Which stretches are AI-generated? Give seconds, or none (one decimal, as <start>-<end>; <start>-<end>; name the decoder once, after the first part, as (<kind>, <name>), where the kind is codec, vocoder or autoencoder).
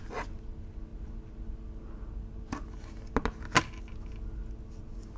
none